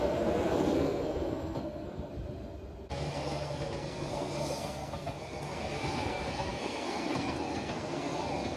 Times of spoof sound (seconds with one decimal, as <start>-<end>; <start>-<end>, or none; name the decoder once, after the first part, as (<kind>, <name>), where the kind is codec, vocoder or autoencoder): 0.0-2.1 (codec, SNAC); 2.9-8.6